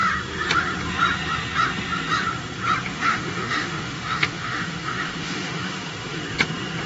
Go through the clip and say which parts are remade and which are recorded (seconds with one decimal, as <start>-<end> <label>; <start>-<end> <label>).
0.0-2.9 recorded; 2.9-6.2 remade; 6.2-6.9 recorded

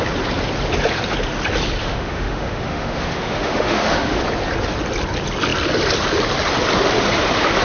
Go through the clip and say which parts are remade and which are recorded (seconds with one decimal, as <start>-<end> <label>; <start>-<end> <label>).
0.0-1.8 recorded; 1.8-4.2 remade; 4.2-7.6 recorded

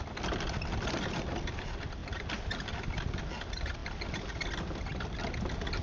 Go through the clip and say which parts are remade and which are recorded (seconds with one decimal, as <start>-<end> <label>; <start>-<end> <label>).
0.0-5.8 recorded

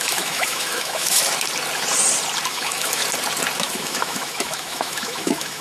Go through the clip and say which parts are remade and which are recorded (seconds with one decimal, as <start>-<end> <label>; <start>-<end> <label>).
0.0-1.2 remade; 1.2-2.5 recorded; 2.5-3.0 remade; 3.0-3.6 recorded; 3.6-5.6 remade

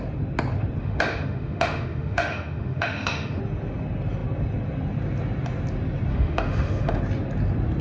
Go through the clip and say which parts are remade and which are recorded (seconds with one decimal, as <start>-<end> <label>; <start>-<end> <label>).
0.0-0.8 recorded; 0.8-3.4 remade; 3.4-6.1 recorded; 6.1-7.0 remade; 7.0-7.8 recorded